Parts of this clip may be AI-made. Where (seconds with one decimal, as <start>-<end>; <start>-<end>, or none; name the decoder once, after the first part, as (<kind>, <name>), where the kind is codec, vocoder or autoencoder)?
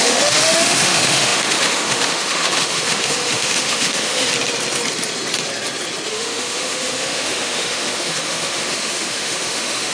0.0-4.3 (autoencoder, DAC-VAE); 6.1-9.9